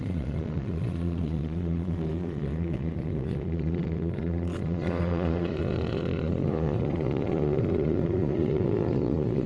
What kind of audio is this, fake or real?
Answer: fake